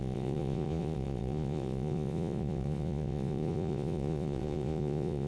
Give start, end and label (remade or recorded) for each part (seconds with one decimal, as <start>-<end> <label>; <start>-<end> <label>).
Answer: 0.0-5.3 remade